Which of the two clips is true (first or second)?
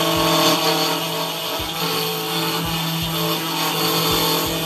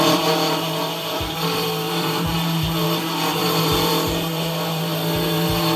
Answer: first